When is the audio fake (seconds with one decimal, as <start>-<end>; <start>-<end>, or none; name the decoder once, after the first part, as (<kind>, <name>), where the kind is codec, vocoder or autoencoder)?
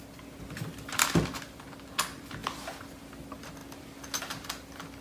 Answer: none